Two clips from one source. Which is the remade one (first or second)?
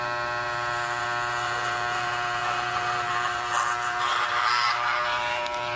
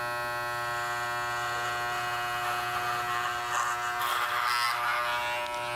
first